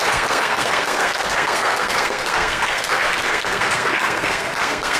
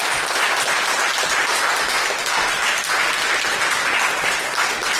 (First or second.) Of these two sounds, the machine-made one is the first